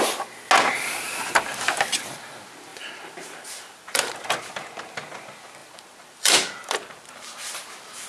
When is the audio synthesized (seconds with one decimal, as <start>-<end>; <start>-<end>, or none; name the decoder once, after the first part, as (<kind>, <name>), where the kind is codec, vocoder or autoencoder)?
0.7-1.4 (vocoder, BigVGAN v2); 2.7-4.1; 5.6-8.1